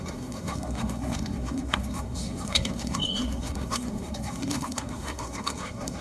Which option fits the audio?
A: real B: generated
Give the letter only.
B